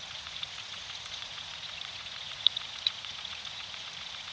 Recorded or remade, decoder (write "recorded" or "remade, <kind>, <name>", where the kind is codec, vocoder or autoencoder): remade, vocoder, Vocos